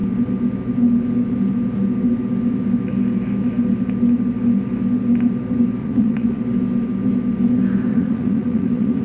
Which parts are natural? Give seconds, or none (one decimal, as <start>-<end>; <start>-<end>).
0.0-5.8; 6.4-7.9

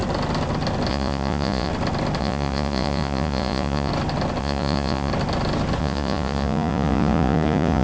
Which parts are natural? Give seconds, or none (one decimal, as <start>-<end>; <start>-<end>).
0.0-0.9; 1.7-2.2; 3.9-4.4; 5.1-5.8

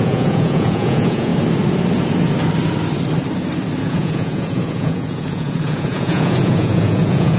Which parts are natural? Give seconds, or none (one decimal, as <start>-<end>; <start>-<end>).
1.3-3.8

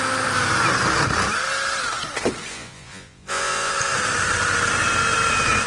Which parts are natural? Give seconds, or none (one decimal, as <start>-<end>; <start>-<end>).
0.0-2.5; 3.7-5.7

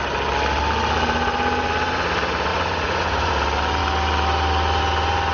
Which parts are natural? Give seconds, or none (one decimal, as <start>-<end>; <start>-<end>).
0.0-2.5; 3.3-5.3

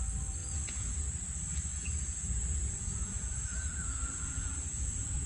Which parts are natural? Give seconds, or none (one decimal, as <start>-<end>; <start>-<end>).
0.0-0.4; 1.0-1.7